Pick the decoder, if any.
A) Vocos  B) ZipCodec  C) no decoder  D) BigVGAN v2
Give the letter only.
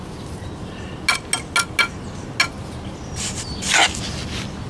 C